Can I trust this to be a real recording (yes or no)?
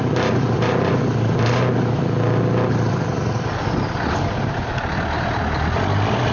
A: yes